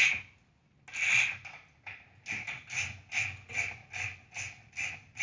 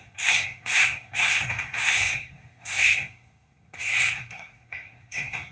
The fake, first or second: second